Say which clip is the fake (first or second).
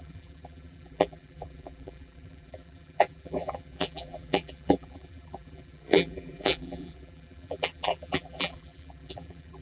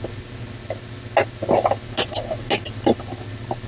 first